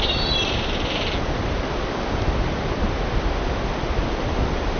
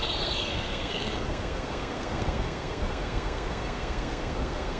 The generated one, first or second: second